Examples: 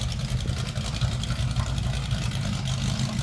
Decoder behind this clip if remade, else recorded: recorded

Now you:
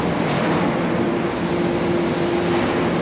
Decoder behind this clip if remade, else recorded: recorded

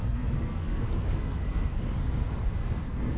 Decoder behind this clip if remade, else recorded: remade, codec, SNAC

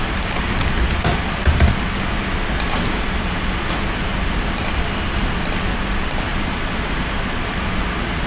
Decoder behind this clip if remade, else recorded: recorded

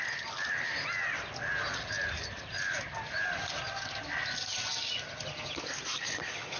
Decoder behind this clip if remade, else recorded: recorded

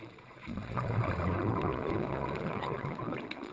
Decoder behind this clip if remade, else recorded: remade, vocoder, Vocos